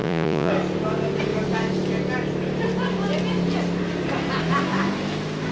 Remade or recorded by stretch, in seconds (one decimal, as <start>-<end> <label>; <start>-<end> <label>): 0.0-0.5 remade; 0.5-5.5 recorded